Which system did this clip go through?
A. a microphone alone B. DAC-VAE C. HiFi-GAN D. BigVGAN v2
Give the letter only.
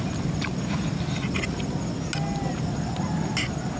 A